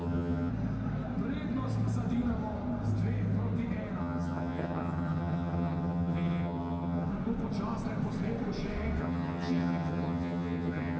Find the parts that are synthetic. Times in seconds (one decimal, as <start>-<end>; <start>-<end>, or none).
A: 0.0-0.5; 4.0-7.1; 9.0-11.0